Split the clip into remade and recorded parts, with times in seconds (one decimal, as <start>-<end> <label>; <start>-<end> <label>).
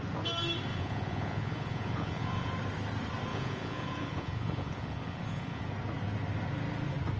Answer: 0.0-0.7 recorded; 0.7-2.5 remade; 2.5-3.3 recorded; 3.3-5.6 remade; 5.6-7.2 recorded